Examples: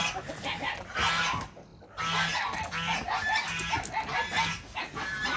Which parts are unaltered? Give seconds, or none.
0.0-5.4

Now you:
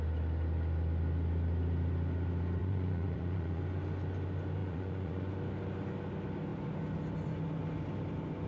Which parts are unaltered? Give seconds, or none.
0.0-2.6; 3.6-4.6; 5.3-8.5